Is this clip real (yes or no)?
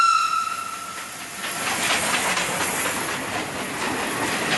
yes